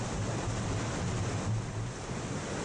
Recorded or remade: recorded